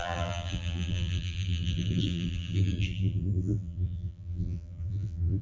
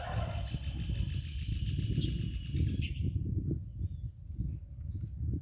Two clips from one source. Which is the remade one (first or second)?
first